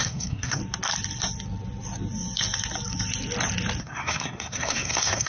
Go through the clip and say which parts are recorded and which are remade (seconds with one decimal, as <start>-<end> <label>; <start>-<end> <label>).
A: 0.0-0.6 remade; 0.6-3.8 recorded; 3.8-5.3 remade